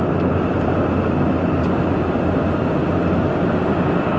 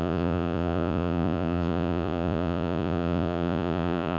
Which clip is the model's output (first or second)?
second